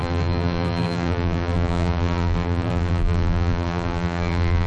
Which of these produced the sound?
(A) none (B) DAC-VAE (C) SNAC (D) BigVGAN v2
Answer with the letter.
D